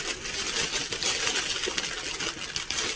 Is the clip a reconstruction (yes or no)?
no